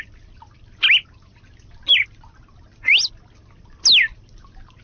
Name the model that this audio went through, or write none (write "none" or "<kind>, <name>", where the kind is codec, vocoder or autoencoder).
none